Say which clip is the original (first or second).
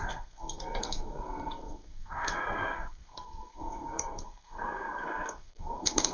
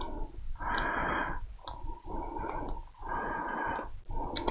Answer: second